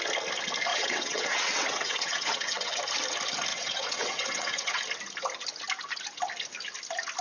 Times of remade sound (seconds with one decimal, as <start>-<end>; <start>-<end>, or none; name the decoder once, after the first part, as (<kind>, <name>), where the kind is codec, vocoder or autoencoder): 0.7-2.8 (vocoder, WaveNeXt); 3.5-4.8